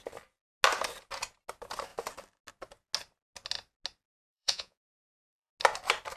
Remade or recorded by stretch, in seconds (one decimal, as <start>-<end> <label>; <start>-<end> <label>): 0.0-4.2 recorded; 4.2-5.5 remade; 5.5-6.2 recorded